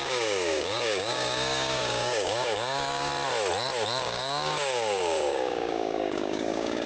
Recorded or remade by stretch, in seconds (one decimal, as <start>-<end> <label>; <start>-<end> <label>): 0.0-3.1 remade; 3.1-4.0 recorded; 4.0-6.9 remade